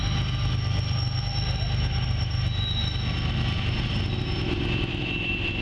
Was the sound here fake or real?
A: real